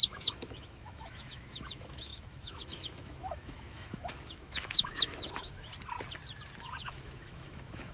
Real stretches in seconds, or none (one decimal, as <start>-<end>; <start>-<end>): 5.7-6.6